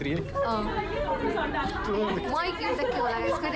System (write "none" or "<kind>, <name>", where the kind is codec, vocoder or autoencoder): none